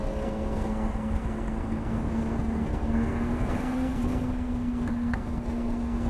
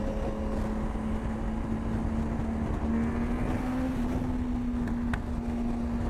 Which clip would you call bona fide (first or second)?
second